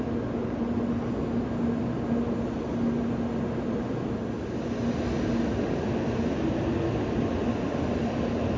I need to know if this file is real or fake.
real